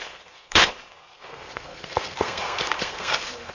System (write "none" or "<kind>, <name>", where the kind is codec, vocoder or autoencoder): codec, SNAC